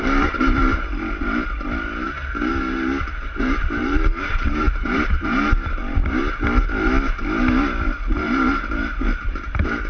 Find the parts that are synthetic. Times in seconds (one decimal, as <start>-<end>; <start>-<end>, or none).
0.0-6.2; 8.0-9.9